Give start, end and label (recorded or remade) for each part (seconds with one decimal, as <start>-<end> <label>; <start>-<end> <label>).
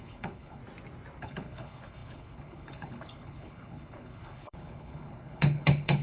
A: 0.0-0.6 remade; 0.6-1.2 recorded; 1.2-6.0 remade